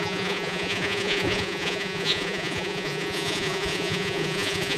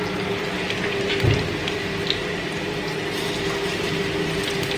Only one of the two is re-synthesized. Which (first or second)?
first